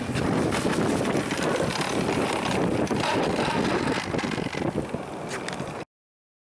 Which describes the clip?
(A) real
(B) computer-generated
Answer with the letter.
A